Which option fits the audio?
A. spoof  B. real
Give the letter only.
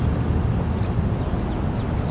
B